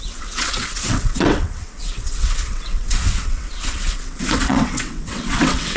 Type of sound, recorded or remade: remade